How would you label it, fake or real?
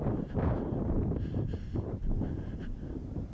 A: fake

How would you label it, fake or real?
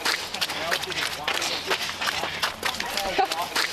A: real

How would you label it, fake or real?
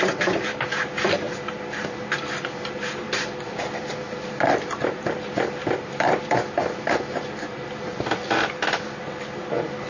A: fake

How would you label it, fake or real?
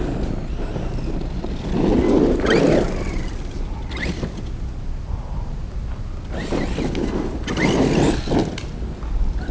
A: real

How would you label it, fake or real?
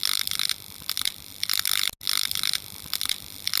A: real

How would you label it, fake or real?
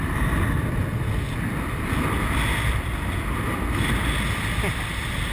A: real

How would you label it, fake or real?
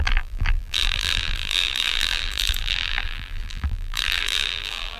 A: fake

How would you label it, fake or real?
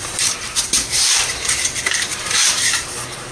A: fake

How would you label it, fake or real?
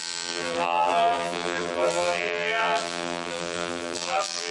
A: fake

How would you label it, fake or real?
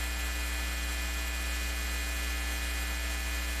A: real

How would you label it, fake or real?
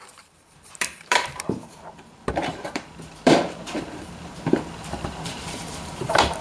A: fake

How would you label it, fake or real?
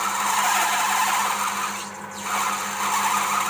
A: real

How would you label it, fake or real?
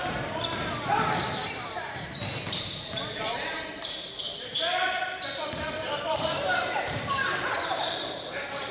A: fake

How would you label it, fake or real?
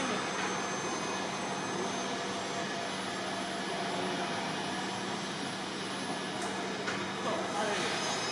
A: real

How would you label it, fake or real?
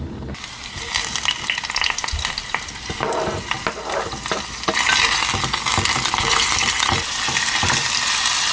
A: real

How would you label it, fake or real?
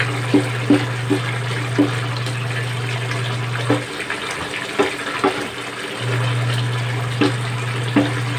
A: real